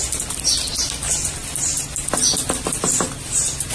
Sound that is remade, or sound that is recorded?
recorded